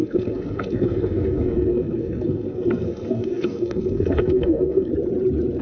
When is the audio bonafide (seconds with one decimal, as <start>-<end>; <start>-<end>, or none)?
4.9-5.6